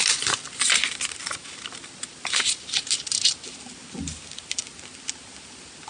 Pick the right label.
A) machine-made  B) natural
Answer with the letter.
B